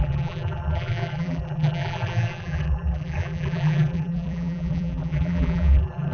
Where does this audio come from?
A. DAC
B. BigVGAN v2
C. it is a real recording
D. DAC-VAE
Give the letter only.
B